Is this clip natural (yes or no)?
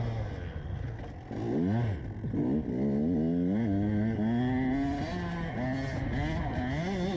yes